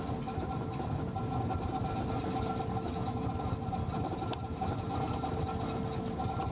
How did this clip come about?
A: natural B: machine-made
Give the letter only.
A